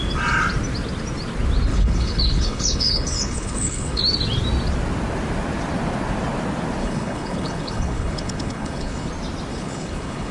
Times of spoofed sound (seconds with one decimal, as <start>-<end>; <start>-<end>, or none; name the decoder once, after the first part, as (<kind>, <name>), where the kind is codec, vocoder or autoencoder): 1.7-4.0 (codec, HILCodec); 6.8-9.1; 9.5-10.3